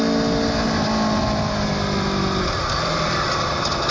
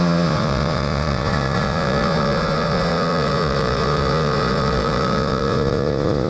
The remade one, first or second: second